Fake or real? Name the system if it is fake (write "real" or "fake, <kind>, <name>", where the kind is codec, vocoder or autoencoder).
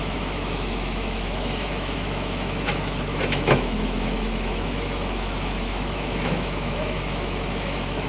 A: fake, autoencoder, DAC-VAE